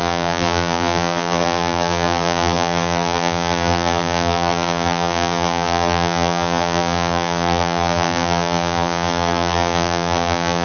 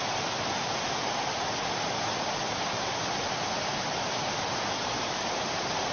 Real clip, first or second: second